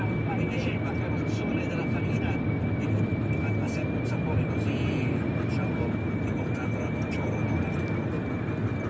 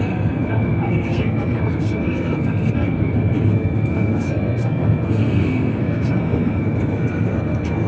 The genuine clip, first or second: first